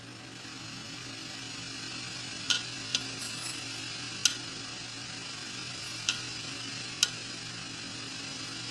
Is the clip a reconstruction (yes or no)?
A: no